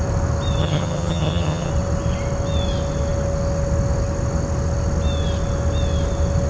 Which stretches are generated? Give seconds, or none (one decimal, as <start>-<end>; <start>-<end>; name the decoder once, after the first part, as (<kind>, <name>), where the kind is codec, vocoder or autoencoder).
0.6-1.7 (vocoder, HiFi-GAN)